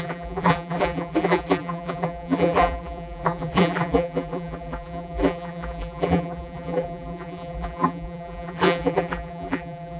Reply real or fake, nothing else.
fake